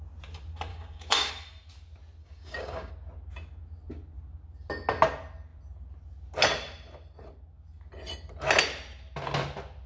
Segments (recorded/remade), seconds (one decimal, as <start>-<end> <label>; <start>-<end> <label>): 0.0-0.7 recorded; 0.7-1.3 remade; 1.3-2.2 recorded; 2.2-2.9 remade; 2.9-9.9 recorded